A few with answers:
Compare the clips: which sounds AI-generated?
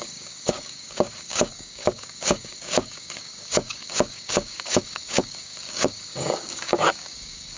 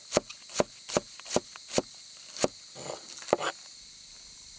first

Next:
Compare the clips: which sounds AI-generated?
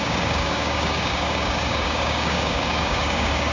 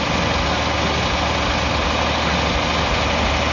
first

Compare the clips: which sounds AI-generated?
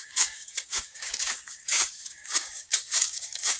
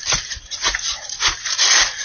first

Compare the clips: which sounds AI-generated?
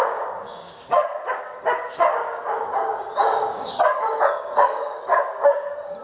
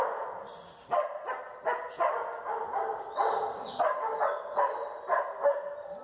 first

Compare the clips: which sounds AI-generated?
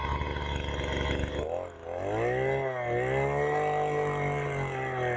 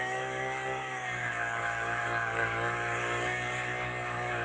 second